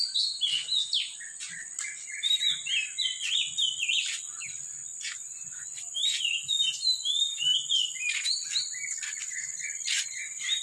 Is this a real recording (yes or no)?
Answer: yes